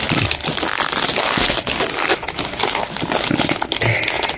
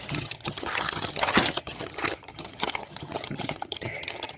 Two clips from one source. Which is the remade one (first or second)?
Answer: second